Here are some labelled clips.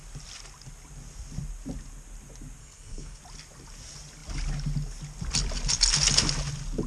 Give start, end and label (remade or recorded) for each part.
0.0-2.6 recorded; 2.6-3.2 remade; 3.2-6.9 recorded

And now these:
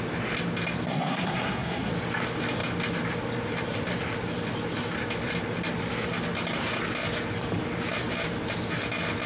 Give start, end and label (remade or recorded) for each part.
0.0-0.9 recorded; 0.9-1.9 remade; 1.9-9.3 recorded

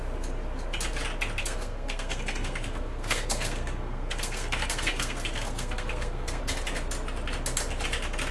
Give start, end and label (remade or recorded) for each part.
0.0-1.4 recorded; 1.4-6.4 remade; 6.4-8.3 recorded

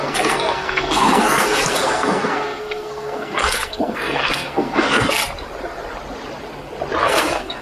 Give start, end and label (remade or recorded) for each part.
0.0-5.2 remade; 5.2-7.0 recorded; 7.0-7.6 remade

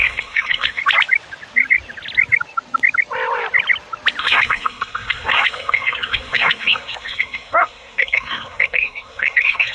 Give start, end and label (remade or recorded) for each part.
0.0-0.8 remade; 0.8-4.2 recorded; 4.2-9.7 remade